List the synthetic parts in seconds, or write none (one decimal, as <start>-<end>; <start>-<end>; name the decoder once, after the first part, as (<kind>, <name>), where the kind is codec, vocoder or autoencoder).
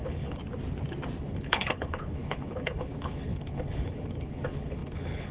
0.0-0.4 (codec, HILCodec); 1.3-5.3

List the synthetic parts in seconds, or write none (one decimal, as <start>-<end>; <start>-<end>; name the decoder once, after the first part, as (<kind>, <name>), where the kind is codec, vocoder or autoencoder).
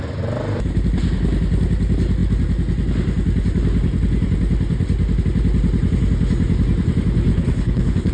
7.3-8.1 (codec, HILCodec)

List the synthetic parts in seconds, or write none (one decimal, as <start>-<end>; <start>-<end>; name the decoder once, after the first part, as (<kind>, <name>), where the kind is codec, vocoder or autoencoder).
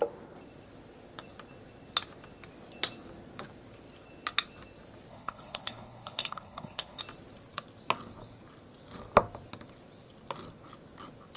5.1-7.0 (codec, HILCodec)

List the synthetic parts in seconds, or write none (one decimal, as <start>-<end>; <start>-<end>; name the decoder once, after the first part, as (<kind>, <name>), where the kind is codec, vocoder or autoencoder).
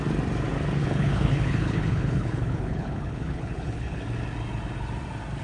0.8-4.0 (codec, HILCodec)